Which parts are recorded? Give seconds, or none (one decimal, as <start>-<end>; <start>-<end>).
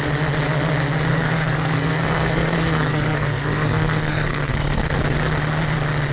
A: 0.0-1.1; 4.8-6.1